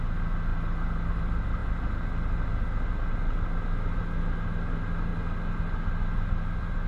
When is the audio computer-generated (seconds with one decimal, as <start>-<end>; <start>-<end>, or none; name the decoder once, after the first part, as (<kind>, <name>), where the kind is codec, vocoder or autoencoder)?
none